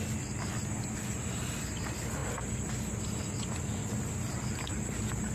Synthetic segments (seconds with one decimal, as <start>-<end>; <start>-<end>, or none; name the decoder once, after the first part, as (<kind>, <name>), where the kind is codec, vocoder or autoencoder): none